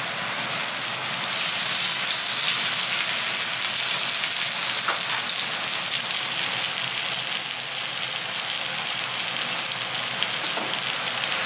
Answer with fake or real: real